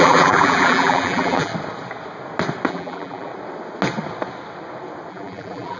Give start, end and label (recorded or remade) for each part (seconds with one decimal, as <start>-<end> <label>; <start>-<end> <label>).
0.0-1.5 remade; 1.5-2.7 recorded; 2.7-3.3 remade; 3.3-5.1 recorded; 5.1-5.8 remade